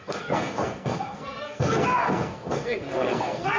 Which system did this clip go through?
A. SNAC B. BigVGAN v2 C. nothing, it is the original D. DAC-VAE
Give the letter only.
A